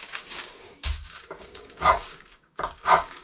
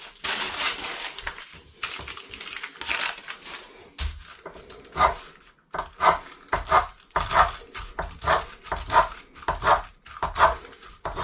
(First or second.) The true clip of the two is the second